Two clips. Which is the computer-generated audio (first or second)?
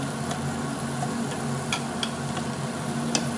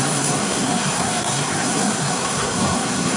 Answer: second